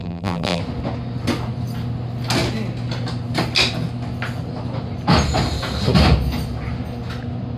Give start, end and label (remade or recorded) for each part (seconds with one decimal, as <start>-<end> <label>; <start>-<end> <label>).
0.0-0.6 remade; 0.6-7.6 recorded